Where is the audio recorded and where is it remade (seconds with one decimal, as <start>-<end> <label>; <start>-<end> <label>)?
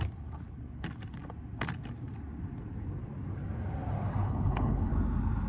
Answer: 0.0-4.2 recorded; 4.2-4.9 remade; 4.9-5.5 recorded